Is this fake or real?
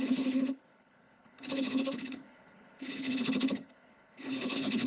fake